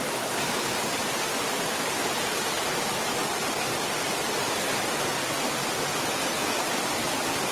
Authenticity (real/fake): real